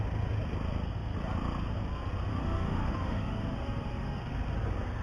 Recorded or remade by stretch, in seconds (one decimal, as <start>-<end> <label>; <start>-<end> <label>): 0.0-2.3 recorded; 2.3-4.2 remade; 4.2-5.0 recorded